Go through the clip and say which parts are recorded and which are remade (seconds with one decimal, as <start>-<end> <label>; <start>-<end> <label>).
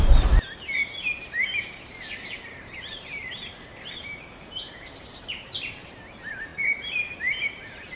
0.0-8.0 remade